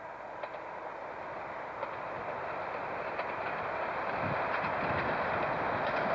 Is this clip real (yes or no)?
yes